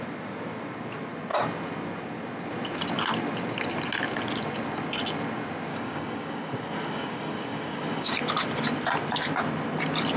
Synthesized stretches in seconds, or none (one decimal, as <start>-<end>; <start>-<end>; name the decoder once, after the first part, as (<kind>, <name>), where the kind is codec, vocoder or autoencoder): 5.7-8.1 (codec, DAC)